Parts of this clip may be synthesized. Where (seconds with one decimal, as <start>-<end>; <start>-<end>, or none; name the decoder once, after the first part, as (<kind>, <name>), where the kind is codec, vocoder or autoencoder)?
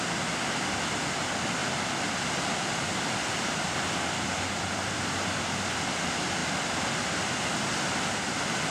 1.6-5.7 (vocoder, BigVGAN v2); 6.4-7.1